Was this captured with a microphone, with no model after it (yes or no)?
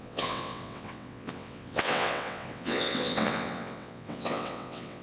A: no